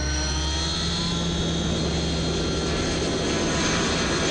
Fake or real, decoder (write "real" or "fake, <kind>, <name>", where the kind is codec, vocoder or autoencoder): real